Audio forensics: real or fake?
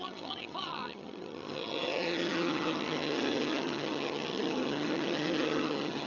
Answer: fake